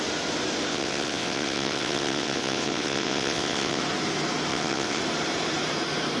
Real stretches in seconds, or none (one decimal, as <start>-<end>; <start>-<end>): 0.0-0.7; 3.8-4.5; 5.0-6.2